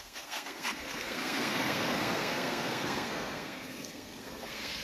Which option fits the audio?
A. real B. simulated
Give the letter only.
B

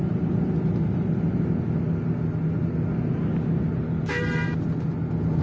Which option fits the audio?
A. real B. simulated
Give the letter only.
A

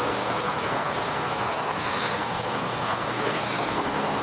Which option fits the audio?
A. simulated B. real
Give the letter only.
A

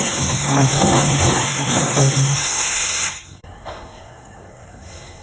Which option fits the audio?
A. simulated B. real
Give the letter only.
A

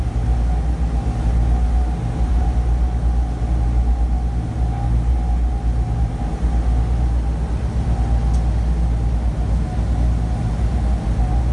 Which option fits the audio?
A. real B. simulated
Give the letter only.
A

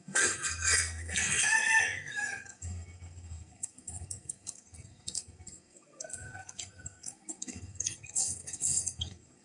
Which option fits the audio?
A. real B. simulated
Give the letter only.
B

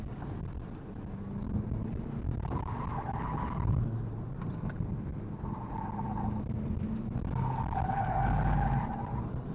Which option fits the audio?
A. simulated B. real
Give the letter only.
B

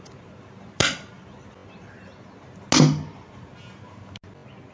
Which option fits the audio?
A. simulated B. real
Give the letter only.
B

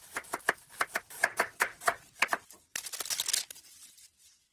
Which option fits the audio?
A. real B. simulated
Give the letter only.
A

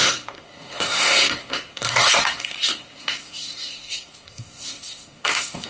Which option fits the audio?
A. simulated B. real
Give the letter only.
A